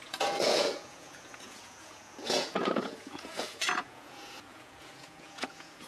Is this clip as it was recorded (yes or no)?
no